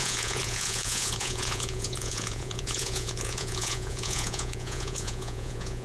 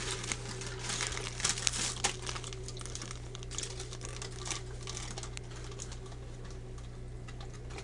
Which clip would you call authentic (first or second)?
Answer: second